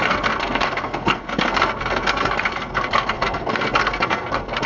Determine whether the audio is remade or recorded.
remade